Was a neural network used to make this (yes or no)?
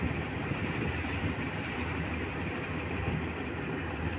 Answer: yes